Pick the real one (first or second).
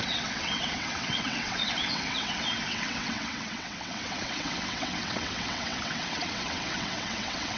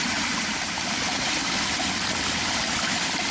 second